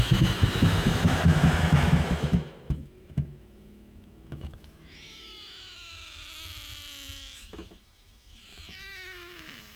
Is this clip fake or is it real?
fake